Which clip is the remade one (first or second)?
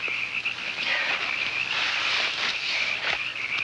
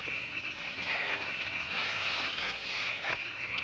second